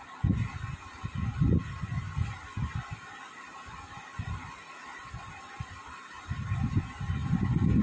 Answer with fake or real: real